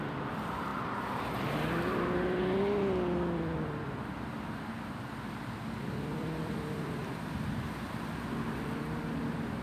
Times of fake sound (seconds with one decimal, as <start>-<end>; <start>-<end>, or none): none